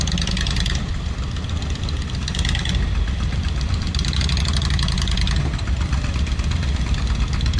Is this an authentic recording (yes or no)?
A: yes